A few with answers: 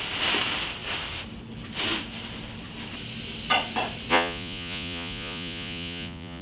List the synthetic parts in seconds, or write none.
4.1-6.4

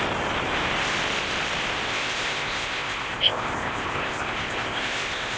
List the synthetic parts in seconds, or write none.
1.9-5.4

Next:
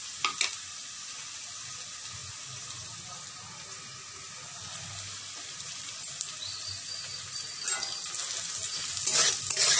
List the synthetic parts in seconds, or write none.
none

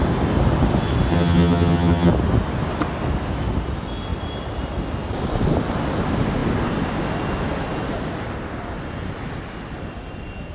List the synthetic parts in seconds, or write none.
1.1-2.1

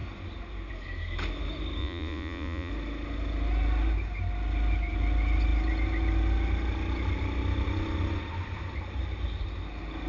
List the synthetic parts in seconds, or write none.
1.8-2.7